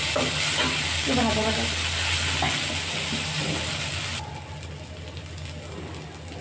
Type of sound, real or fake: real